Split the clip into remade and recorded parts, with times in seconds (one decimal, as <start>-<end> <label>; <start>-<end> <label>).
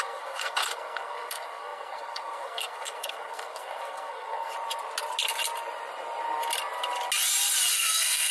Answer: 0.0-4.5 remade; 4.5-7.7 recorded; 7.7-8.3 remade